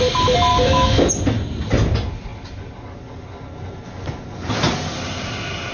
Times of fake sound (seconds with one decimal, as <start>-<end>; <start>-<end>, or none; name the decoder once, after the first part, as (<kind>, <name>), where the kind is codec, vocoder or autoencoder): 0.5-1.1 (autoencoder, DAC-VAE)